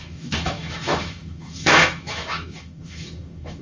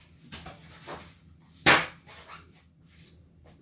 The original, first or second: second